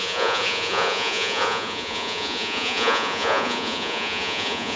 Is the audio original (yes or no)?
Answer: no